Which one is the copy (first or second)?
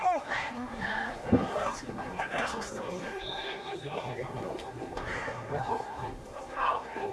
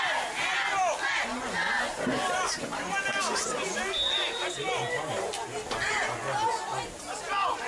first